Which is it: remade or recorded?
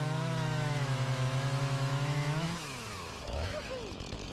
remade